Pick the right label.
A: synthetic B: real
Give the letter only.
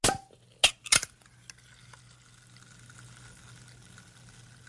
B